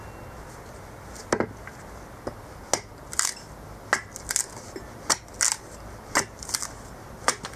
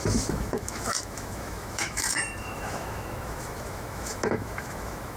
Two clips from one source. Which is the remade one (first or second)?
second